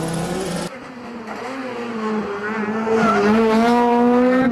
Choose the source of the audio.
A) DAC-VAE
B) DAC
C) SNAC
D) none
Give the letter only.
D